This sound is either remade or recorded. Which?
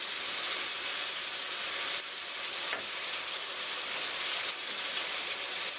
remade